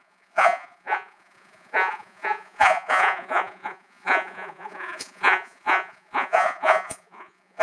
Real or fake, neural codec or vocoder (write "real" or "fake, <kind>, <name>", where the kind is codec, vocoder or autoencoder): fake, vocoder, Vocos